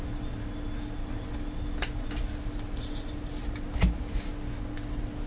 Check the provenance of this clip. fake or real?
real